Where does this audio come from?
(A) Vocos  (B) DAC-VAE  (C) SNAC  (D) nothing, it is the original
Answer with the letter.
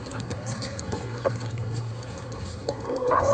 C